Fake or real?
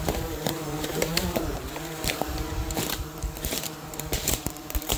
fake